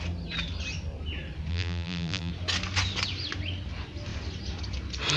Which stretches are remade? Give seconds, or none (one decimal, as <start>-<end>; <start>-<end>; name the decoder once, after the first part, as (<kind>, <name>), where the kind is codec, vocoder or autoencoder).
1.5-2.3 (vocoder, BigVGAN v2)